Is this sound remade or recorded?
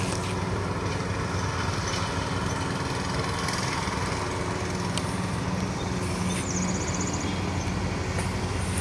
recorded